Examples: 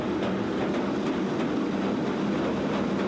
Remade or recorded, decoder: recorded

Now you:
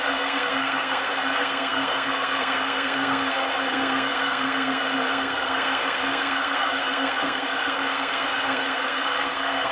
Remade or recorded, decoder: remade, codec, SNAC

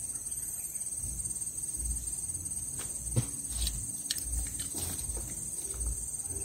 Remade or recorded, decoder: recorded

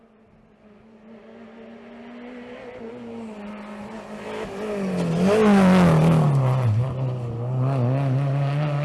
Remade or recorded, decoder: recorded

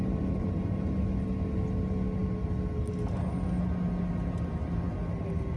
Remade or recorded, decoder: recorded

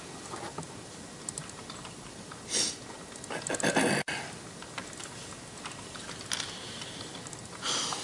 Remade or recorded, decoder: recorded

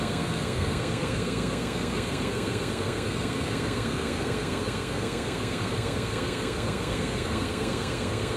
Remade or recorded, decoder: remade, codec, SNAC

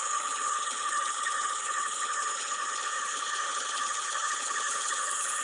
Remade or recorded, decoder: remade, codec, HILCodec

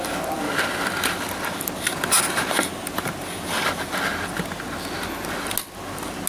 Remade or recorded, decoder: recorded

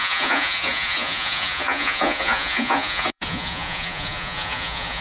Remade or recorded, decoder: remade, vocoder, Vocos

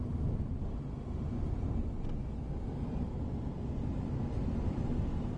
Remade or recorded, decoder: recorded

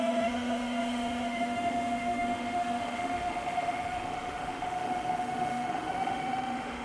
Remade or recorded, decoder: remade, autoencoder, DAC-VAE